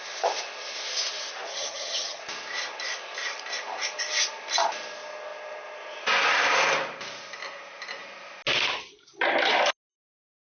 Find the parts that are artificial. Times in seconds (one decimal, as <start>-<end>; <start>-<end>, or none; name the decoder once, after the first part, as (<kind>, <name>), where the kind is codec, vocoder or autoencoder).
1.5-2.2 (vocoder, HiFi-GAN)